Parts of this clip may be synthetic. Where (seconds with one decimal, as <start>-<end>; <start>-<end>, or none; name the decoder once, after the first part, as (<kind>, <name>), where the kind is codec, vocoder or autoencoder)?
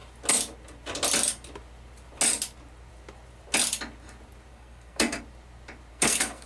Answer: 4.5-5.2 (codec, SNAC); 5.9-6.5